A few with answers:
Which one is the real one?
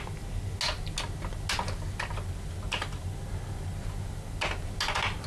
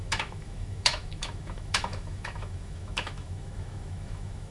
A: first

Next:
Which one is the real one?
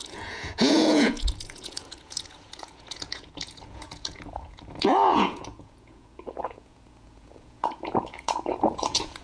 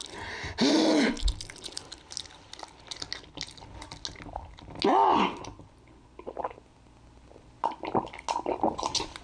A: second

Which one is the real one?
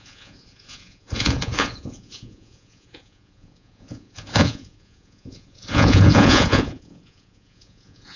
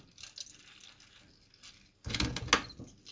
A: second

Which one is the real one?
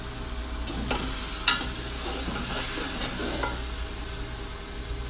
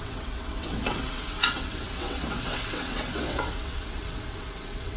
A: first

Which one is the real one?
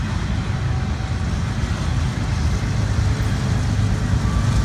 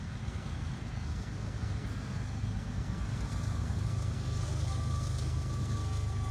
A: first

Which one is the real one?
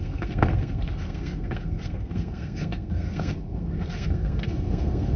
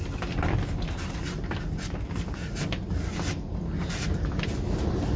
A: second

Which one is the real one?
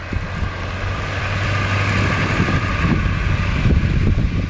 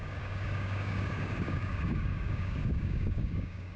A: first